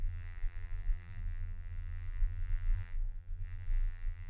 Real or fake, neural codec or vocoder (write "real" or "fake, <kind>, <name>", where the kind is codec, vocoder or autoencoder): fake, vocoder, BigVGAN v2